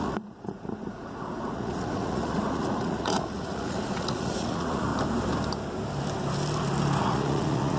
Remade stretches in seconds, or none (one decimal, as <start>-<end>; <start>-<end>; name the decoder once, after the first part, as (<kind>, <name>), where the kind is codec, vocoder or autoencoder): 0.0-4.9 (vocoder, Vocos); 7.0-7.8